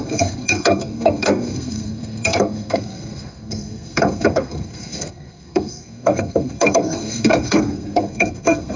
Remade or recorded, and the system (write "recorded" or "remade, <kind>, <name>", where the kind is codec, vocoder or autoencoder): remade, codec, SNAC